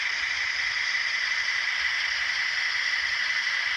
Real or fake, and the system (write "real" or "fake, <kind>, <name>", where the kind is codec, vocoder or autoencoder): real